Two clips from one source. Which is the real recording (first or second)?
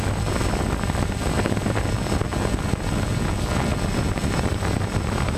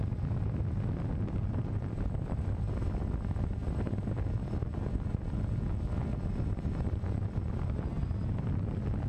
first